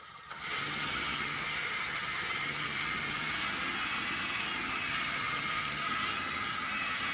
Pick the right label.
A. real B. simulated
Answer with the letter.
B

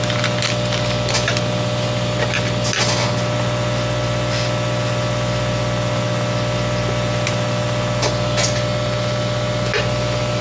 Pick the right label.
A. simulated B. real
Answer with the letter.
B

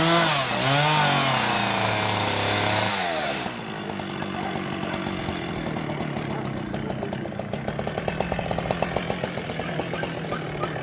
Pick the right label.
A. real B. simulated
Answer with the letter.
A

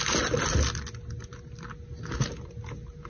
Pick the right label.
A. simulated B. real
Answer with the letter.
B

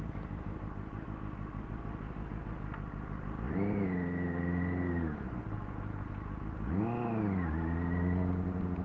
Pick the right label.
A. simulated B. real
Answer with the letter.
B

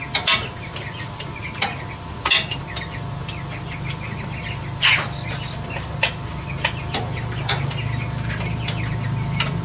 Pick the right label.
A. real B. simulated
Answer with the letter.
A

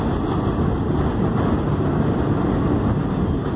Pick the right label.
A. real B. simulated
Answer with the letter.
A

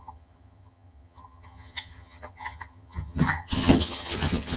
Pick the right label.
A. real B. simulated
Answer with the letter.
B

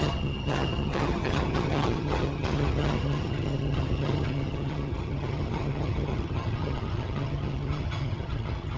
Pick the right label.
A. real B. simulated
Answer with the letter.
B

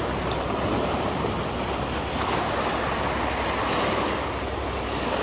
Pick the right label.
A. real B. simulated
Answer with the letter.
A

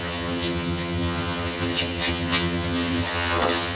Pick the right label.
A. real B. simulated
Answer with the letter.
B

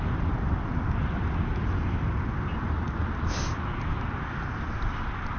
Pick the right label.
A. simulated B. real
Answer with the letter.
B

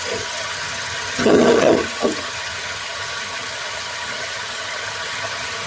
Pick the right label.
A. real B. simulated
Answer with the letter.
B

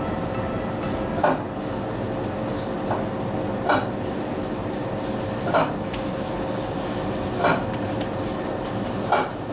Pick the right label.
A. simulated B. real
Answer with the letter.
B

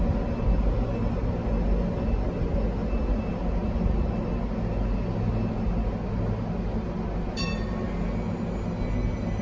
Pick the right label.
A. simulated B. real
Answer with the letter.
B